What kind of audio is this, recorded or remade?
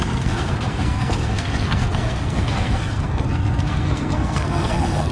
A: remade